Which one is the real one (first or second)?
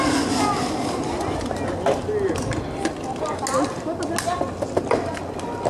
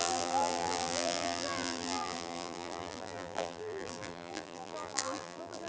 first